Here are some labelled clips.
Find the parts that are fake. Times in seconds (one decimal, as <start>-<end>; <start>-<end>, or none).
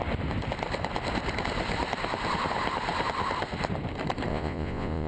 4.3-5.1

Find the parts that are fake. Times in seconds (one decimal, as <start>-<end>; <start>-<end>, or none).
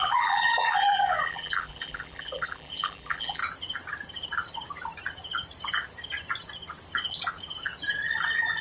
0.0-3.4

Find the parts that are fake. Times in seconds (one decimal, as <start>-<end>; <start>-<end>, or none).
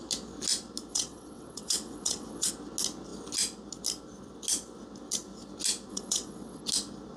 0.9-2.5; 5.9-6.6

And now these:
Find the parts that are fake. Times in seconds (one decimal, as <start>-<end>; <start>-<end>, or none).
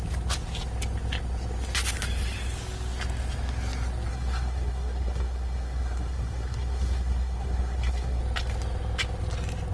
4.1-8.2